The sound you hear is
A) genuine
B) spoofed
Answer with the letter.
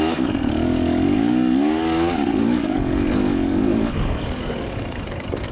B